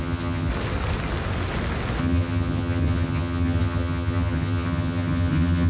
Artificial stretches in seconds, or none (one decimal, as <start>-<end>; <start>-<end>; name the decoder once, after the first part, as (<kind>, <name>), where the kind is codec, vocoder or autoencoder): 0.0-0.5 (vocoder, HiFi-GAN); 2.0-5.7